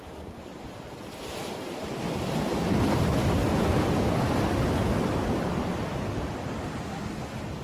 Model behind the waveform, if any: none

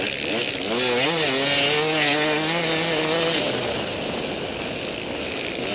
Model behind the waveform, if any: none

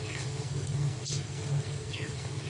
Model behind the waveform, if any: codec, SNAC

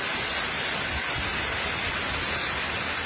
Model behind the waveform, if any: none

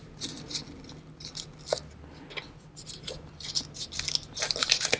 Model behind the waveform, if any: none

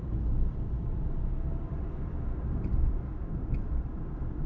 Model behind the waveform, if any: vocoder, BigVGAN v2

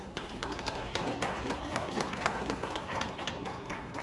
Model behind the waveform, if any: codec, SNAC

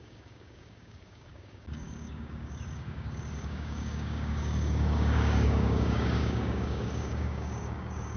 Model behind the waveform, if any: codec, DAC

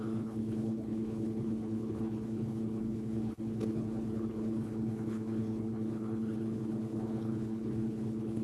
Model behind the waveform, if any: codec, HILCodec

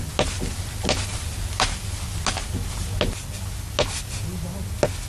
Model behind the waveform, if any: none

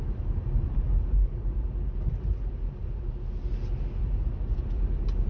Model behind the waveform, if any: none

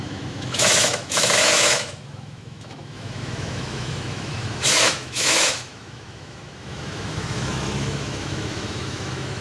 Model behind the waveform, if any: autoencoder, DAC-VAE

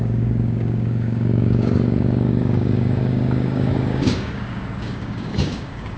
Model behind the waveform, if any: codec, DAC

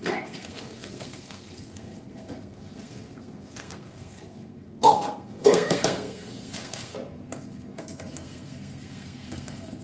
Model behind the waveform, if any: codec, SNAC